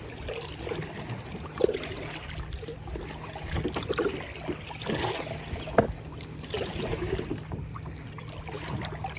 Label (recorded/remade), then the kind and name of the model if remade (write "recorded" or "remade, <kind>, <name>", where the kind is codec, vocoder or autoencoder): recorded